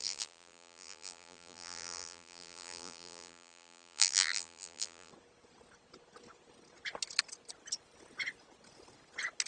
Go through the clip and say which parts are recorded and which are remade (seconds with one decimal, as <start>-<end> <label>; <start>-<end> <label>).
0.0-5.1 remade; 5.1-9.5 recorded